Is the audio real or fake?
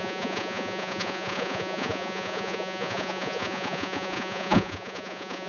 fake